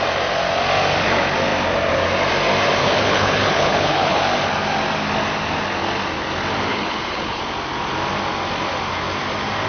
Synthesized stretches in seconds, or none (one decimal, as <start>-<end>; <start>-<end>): 2.8-4.2; 6.7-7.4

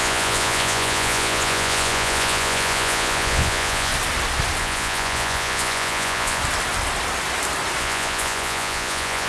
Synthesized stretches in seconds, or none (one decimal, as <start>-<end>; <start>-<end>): 0.0-3.9; 4.6-6.4; 7.8-9.3

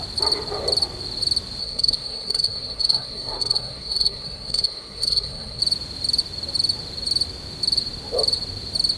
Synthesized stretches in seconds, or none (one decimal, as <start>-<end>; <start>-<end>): 1.6-5.6